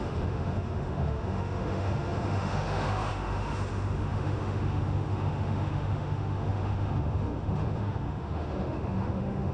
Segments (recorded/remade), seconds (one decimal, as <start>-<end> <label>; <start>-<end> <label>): 0.0-9.5 remade